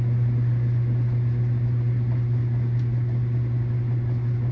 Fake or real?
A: real